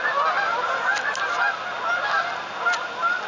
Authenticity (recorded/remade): recorded